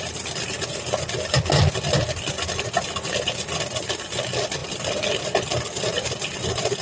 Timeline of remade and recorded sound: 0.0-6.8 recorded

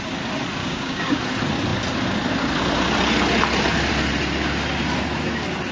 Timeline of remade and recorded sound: 0.0-0.6 recorded; 0.6-1.2 remade; 1.2-5.7 recorded

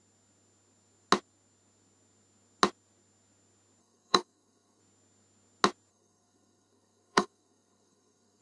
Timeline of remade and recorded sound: 0.0-3.8 recorded; 3.8-4.8 remade; 4.8-5.9 recorded; 5.9-8.4 remade

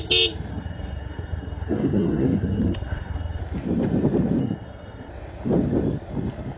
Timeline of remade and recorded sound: 0.0-0.5 recorded; 0.5-3.4 remade; 3.4-4.4 recorded; 4.4-5.1 remade; 5.1-6.6 recorded